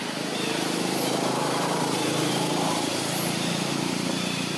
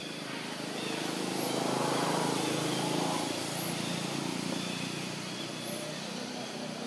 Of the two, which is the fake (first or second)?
first